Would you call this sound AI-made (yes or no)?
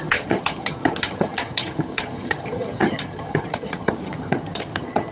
yes